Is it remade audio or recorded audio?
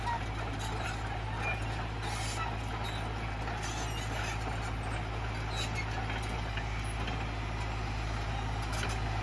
recorded